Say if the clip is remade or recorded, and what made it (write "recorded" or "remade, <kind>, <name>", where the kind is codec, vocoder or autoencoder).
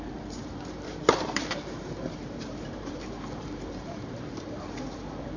remade, vocoder, BigVGAN v2